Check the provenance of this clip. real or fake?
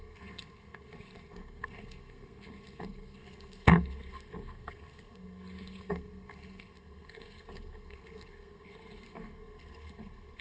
fake